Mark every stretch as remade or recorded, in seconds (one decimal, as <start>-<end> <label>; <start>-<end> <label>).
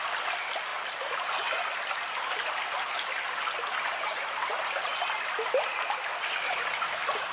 0.0-7.3 recorded